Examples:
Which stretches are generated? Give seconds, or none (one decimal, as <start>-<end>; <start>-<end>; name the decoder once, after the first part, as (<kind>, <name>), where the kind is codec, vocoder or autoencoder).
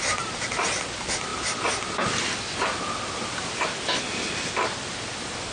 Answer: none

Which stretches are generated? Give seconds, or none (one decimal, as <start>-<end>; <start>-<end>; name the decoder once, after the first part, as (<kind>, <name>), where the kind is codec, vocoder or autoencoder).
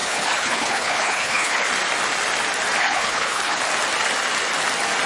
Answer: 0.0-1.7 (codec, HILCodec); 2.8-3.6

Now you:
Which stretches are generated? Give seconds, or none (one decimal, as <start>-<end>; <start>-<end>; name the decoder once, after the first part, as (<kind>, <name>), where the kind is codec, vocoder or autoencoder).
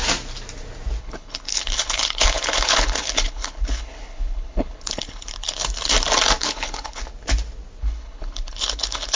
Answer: 1.0-5.6 (codec, HILCodec); 6.4-7.0; 7.8-9.2